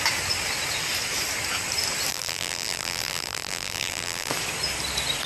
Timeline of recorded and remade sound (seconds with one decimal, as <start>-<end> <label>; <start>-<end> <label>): 0.0-2.1 recorded; 2.1-4.3 remade; 4.3-5.3 recorded